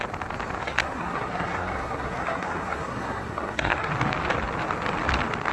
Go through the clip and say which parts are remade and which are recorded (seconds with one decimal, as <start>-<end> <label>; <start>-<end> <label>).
0.0-0.6 recorded; 0.6-3.9 remade; 3.9-5.5 recorded